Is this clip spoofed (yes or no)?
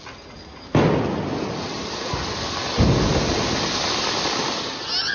no